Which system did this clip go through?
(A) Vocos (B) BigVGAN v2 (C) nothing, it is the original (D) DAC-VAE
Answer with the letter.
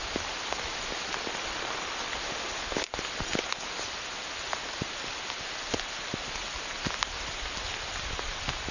C